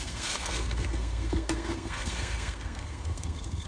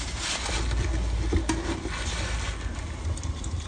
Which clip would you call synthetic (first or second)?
first